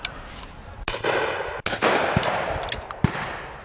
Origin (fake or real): real